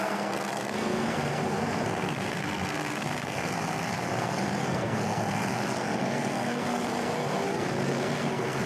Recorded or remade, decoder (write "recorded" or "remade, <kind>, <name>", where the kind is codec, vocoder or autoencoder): remade, codec, SNAC